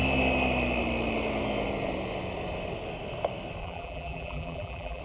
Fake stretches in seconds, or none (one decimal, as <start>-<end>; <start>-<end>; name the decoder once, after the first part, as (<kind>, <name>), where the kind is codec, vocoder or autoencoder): 3.6-5.0 (vocoder, BigVGAN v2)